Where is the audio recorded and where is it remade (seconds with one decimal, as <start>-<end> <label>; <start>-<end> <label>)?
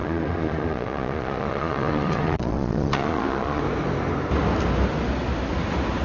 0.0-3.6 remade; 3.6-6.0 recorded